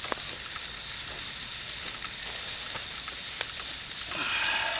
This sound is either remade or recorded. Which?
recorded